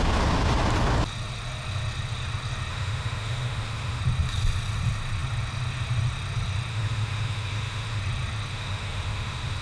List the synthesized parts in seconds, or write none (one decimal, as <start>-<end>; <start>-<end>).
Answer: 2.7-4.0; 6.7-8.0; 8.5-9.6